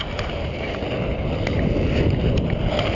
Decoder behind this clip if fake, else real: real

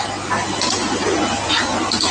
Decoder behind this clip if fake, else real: real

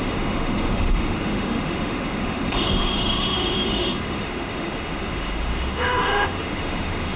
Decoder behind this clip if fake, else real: fake, autoencoder, DAC-VAE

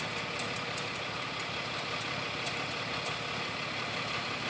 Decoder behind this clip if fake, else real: real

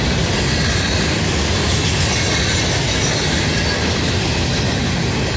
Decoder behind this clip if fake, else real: real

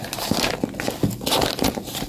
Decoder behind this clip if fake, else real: real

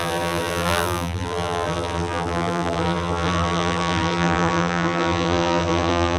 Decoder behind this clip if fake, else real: fake, vocoder, BigVGAN v2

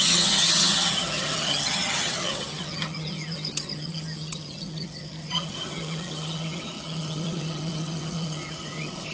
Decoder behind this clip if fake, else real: fake, vocoder, HiFi-GAN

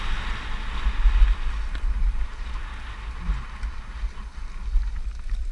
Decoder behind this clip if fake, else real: real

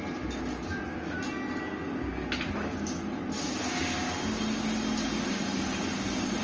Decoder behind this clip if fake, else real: real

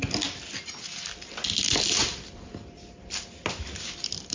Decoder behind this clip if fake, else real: real